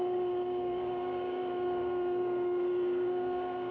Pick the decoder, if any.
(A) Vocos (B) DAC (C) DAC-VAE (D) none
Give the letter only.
B